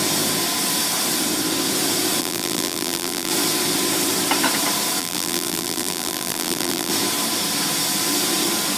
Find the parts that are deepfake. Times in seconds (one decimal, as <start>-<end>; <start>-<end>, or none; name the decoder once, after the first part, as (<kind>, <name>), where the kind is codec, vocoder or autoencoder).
2.2-3.3 (vocoder, BigVGAN v2); 5.0-6.9